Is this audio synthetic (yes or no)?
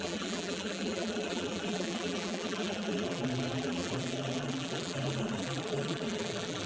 yes